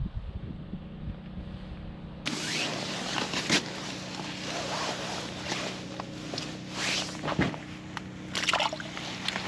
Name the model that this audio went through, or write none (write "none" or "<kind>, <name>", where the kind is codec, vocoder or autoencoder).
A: none